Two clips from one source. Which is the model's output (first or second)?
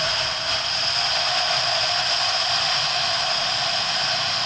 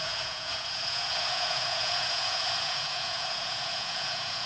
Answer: second